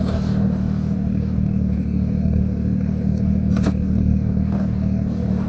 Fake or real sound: fake